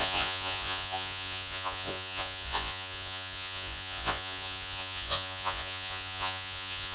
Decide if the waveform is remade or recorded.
remade